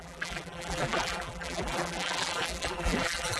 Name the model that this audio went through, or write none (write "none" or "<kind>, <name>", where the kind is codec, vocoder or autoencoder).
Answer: vocoder, BigVGAN v2